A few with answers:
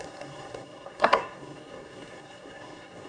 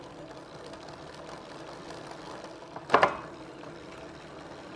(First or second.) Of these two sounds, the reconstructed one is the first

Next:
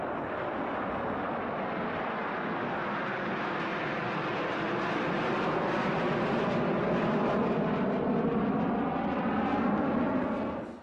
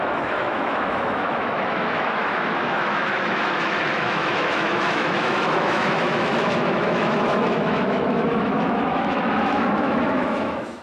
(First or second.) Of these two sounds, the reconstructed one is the second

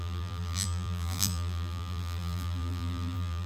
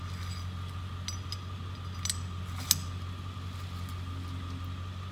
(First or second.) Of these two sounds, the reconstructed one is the first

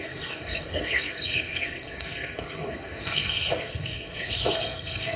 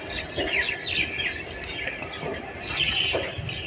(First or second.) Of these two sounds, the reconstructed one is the first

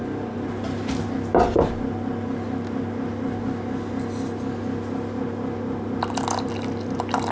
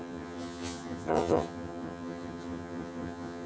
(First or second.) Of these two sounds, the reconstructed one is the second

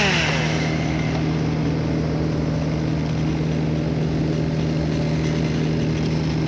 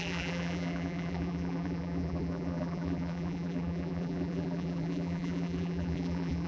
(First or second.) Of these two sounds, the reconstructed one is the second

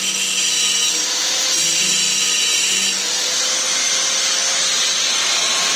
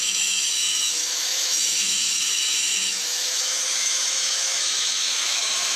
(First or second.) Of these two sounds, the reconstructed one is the second